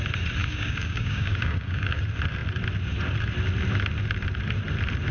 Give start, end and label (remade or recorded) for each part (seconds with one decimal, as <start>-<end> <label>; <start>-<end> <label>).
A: 0.0-0.4 recorded; 0.4-2.0 remade; 2.0-5.1 recorded